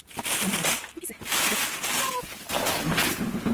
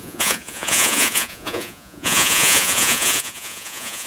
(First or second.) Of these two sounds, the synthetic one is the second